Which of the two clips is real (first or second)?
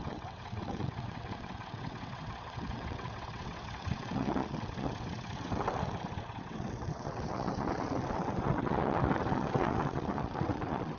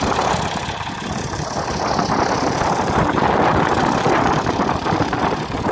second